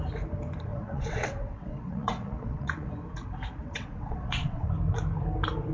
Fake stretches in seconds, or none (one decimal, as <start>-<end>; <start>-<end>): 0.7-2.9; 3.6-4.7